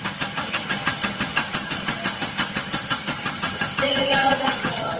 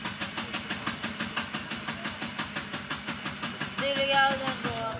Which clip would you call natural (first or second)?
second